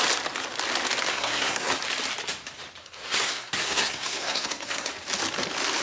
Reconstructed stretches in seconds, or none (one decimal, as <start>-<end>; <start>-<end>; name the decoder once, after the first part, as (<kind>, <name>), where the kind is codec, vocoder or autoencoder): 1.1-1.7 (codec, SNAC); 2.8-4.9